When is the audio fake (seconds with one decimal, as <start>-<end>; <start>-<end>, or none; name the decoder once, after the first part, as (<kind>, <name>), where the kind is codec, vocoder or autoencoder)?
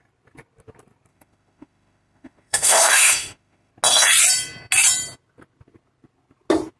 1.1-3.7 (autoencoder, DAC-VAE)